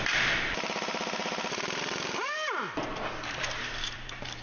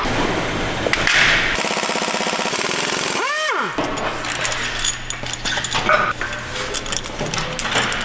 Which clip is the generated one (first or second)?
first